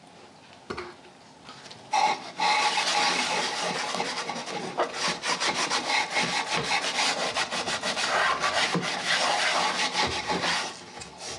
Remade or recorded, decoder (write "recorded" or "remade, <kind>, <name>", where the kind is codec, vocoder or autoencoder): recorded